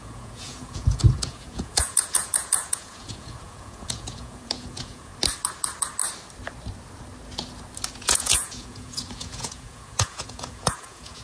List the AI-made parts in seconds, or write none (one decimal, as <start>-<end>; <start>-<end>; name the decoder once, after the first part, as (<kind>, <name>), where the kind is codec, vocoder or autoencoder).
0.0-5.1 (vocoder, Vocos); 7.9-11.2